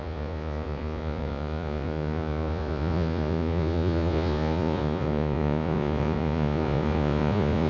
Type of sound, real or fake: fake